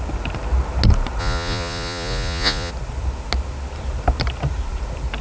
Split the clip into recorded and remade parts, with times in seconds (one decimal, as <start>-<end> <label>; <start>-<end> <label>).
0.0-1.2 recorded; 1.2-2.7 remade; 2.7-5.2 recorded